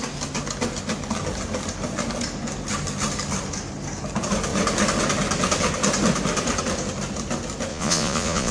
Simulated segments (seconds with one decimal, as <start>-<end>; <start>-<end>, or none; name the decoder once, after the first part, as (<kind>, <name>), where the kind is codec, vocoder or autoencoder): 7.7-8.5 (vocoder, Vocos)